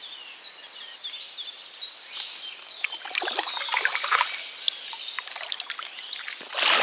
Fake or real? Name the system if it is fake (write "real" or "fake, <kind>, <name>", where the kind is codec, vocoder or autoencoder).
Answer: real